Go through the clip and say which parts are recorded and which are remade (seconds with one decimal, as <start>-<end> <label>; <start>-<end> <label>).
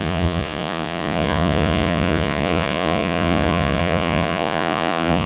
0.0-5.3 remade